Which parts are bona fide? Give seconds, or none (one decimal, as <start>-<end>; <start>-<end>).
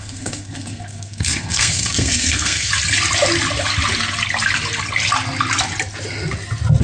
2.7-6.8